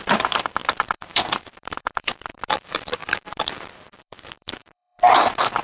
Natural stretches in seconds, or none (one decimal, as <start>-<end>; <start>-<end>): none